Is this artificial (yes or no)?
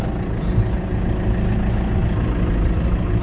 no